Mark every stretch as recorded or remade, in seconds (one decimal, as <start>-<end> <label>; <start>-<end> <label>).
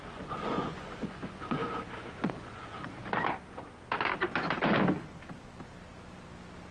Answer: 0.0-1.6 remade; 1.6-2.1 recorded; 2.1-3.0 remade; 3.0-6.7 recorded